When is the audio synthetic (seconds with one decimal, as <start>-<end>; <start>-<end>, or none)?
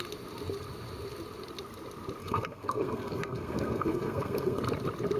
2.2-4.6